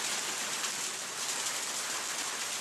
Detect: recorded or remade recorded